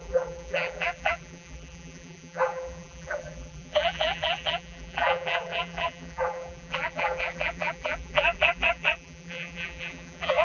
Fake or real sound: fake